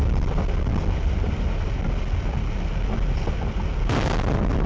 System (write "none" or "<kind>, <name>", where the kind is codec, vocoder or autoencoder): none